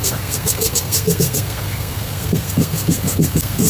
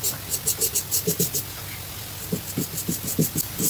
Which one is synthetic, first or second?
first